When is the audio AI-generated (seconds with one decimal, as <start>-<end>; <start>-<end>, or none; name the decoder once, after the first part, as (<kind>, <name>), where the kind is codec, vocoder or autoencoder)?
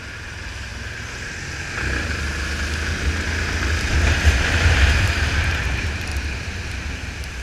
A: 0.0-0.7 (vocoder, BigVGAN v2); 5.0-6.1